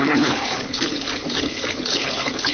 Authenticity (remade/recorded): remade